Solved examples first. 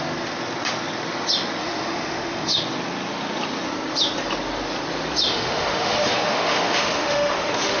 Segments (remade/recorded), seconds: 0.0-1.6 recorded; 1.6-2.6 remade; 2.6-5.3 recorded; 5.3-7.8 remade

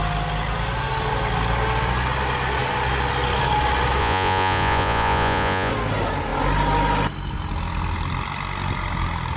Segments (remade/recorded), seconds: 0.0-4.0 recorded; 4.0-5.7 remade; 5.7-9.4 recorded

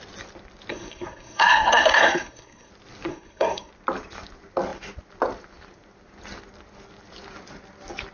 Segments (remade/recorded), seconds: 0.0-0.7 recorded; 0.7-2.7 remade; 2.7-3.1 recorded; 3.1-3.7 remade; 3.7-8.1 recorded